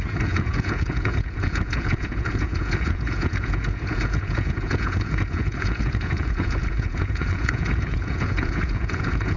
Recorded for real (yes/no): no